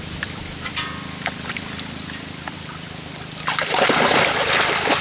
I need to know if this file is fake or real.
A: fake